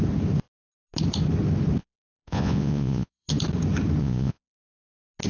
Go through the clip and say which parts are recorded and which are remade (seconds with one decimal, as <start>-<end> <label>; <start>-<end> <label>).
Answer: 0.0-1.8 recorded; 1.8-3.3 remade; 3.3-4.0 recorded; 4.0-4.7 remade; 4.7-5.3 recorded

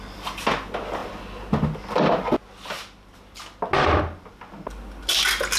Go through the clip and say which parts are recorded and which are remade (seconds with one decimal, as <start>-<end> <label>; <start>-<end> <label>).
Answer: 0.0-5.6 recorded

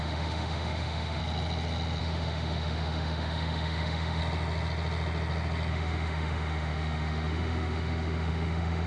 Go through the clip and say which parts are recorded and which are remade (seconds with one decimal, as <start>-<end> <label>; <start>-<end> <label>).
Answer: 0.0-1.2 remade; 1.2-2.0 recorded; 2.0-4.2 remade; 4.2-5.7 recorded; 5.7-8.9 remade

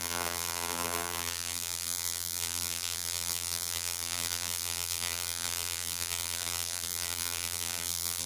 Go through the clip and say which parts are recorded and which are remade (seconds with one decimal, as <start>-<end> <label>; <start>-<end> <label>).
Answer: 0.0-8.3 remade

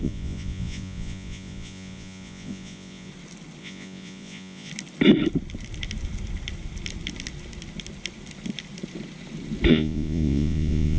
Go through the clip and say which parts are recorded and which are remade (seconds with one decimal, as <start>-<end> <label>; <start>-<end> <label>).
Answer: 0.0-3.1 remade; 3.1-3.6 recorded; 3.6-4.7 remade; 4.7-9.7 recorded; 9.7-11.0 remade